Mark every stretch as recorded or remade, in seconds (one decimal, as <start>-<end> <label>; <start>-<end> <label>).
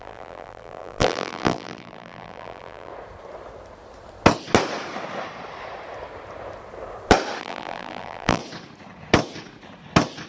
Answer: 0.0-2.9 remade; 2.9-7.4 recorded; 7.4-8.4 remade; 8.4-10.3 recorded